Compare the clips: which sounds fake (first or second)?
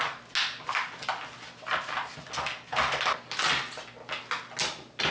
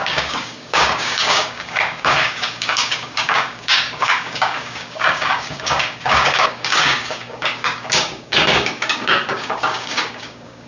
second